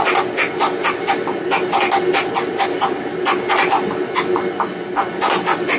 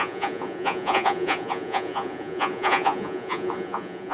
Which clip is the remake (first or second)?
second